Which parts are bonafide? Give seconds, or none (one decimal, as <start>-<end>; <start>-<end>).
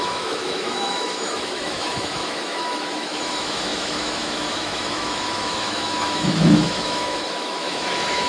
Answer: none